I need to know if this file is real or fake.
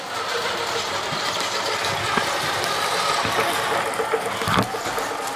real